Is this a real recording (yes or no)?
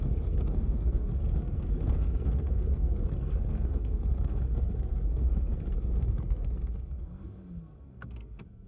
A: no